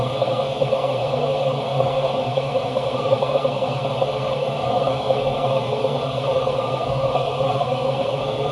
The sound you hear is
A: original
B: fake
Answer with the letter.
B